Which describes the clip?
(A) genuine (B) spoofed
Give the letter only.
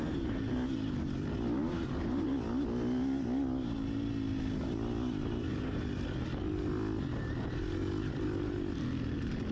A